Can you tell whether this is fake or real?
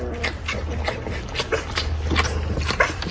real